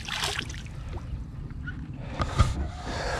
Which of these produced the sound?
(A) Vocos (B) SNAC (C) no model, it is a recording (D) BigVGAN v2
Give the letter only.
C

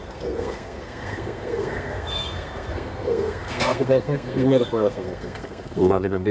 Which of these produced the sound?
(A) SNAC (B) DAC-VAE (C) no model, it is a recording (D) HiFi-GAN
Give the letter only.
A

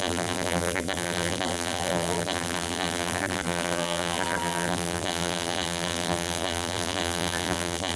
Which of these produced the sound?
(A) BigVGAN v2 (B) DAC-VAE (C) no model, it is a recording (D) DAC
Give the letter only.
A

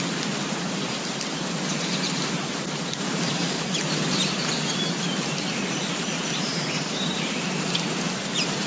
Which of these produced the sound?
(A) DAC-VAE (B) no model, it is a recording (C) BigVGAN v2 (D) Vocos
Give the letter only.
C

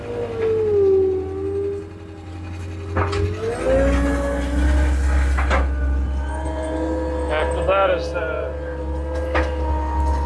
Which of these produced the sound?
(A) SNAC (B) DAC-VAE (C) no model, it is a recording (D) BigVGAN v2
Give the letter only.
C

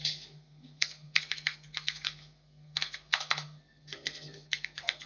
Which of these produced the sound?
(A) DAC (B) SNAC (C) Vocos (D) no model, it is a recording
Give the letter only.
B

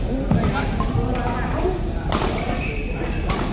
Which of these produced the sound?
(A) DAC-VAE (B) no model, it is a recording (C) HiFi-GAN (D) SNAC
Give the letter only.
B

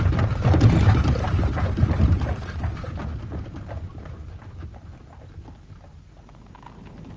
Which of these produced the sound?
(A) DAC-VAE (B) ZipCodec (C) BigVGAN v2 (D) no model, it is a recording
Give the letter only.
D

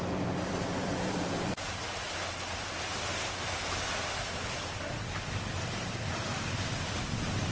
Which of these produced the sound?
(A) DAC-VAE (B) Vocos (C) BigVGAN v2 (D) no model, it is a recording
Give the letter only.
C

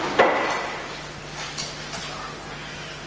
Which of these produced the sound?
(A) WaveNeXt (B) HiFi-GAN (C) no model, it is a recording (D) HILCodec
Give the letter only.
C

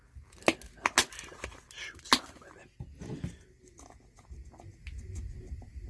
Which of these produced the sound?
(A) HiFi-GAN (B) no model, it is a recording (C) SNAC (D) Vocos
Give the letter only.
B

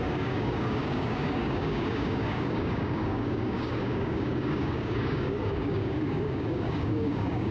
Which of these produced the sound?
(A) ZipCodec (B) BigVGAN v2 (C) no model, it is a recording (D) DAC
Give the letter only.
D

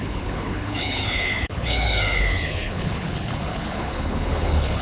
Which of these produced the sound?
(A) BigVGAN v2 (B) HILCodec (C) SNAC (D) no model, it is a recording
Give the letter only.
B